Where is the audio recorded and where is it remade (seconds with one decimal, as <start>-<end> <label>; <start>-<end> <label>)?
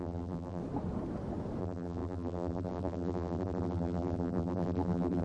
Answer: 0.0-0.6 remade; 0.6-1.6 recorded; 1.6-5.2 remade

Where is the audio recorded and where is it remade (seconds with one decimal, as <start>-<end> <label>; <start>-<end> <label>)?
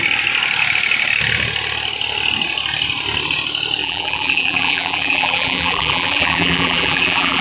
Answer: 0.0-3.8 recorded; 3.8-7.4 remade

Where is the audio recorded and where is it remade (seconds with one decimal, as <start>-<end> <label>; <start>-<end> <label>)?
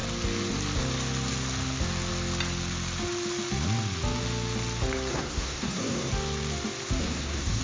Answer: 0.0-5.1 recorded; 5.1-6.1 remade; 6.1-7.0 recorded; 7.0-7.6 remade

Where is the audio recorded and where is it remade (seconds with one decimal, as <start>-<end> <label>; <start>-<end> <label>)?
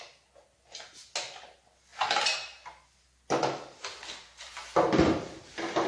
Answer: 0.0-5.9 recorded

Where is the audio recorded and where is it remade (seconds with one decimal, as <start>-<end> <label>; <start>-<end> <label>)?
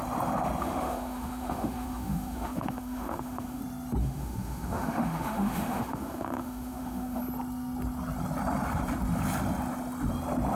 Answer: 0.0-0.6 recorded; 0.6-3.6 remade; 3.6-4.0 recorded; 4.0-7.2 remade; 7.2-10.6 recorded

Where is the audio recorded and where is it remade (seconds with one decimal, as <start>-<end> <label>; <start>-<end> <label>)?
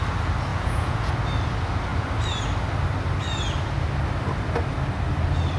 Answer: 0.0-0.5 recorded; 0.5-1.1 remade; 1.1-5.6 recorded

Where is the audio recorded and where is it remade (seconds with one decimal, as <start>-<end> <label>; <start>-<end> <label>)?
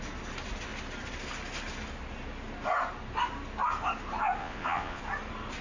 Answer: 0.0-4.4 recorded; 4.4-5.0 remade; 5.0-5.6 recorded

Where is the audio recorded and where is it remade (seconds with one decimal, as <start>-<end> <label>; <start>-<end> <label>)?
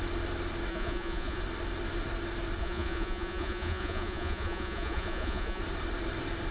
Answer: 0.0-0.7 recorded; 0.7-1.4 remade; 1.4-2.6 recorded; 2.6-5.6 remade; 5.6-6.5 recorded